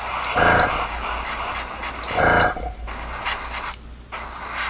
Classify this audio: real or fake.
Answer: real